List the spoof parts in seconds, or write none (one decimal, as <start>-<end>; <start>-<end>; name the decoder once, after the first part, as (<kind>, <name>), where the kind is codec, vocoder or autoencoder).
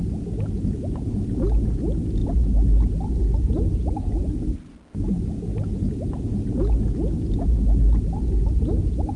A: none